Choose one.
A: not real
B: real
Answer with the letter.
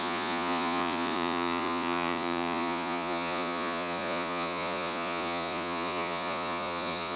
A